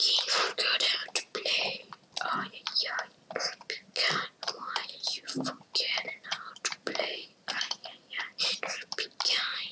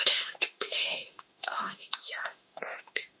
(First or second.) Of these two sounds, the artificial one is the second